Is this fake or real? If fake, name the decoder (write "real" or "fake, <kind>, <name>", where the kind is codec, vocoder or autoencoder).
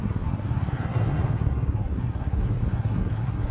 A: fake, codec, SNAC